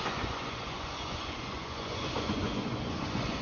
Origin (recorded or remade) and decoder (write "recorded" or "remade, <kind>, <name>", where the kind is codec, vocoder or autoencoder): remade, vocoder, Vocos